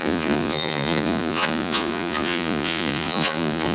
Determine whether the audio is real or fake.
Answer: fake